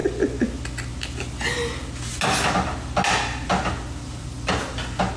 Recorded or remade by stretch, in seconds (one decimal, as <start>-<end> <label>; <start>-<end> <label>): 0.0-5.2 recorded